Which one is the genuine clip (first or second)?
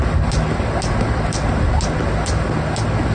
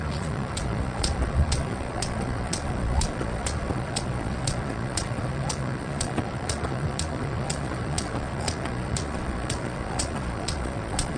first